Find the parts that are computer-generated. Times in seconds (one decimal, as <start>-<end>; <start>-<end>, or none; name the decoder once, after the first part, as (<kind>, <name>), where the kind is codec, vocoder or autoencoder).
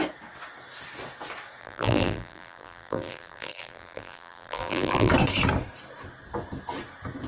1.6-5.1 (vocoder, BigVGAN v2)